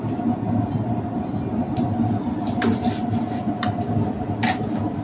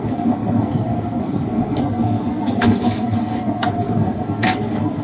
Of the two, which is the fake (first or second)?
second